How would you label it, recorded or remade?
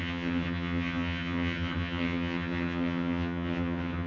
remade